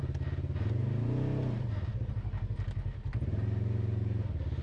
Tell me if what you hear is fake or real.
real